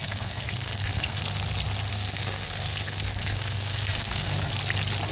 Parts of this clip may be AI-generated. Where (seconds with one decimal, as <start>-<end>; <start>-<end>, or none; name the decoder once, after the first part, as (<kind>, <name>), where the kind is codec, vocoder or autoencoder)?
0.0-1.2 (codec, SNAC); 1.9-4.5